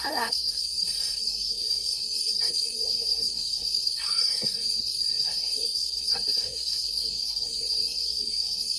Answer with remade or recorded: remade